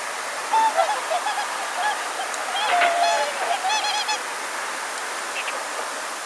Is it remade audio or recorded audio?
recorded